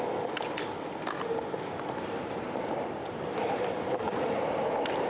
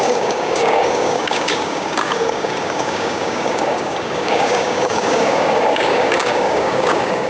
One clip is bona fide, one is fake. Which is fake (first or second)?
second